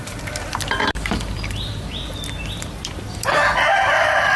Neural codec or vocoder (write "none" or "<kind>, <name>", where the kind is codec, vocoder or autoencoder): vocoder, BigVGAN v2